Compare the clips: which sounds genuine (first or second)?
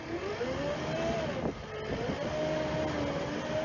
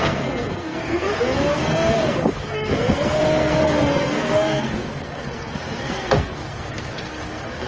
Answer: first